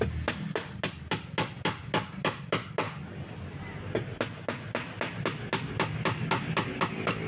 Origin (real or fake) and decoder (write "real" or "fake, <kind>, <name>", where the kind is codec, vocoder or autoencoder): real